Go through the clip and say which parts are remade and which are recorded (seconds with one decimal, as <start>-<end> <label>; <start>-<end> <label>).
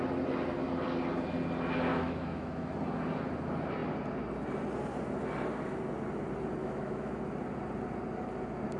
0.0-1.9 recorded; 1.9-2.7 remade; 2.7-6.6 recorded; 6.6-7.2 remade; 7.2-8.8 recorded